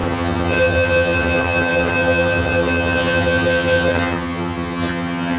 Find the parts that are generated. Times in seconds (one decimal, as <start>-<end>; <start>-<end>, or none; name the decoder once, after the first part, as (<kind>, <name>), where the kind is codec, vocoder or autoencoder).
0.0-5.4 (vocoder, HiFi-GAN)